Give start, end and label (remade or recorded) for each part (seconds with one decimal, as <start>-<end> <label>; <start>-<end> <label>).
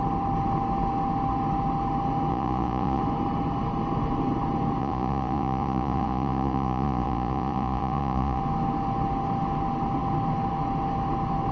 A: 0.0-2.3 recorded; 2.3-3.0 remade; 3.0-4.8 recorded; 4.8-8.4 remade; 8.4-11.5 recorded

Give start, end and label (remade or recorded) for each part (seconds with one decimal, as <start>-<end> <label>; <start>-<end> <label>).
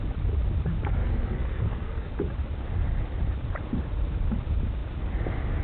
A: 0.0-1.0 recorded; 1.0-2.1 remade; 2.1-5.6 recorded